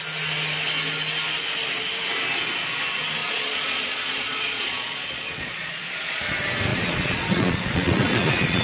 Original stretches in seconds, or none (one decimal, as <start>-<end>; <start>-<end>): 0.0-3.2; 6.2-6.7